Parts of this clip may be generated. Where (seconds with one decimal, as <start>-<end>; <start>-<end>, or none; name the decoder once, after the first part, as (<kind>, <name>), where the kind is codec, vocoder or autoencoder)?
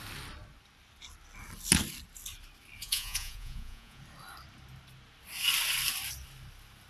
2.8-4.0 (vocoder, Vocos)